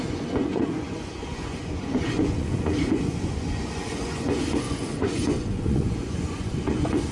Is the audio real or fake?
fake